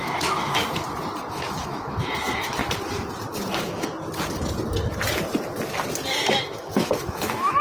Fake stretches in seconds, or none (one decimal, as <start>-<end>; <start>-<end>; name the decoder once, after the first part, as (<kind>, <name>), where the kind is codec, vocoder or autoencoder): 0.0-0.6 (autoencoder, DAC-VAE); 1.3-2.6; 3.5-3.9; 6.4-7.6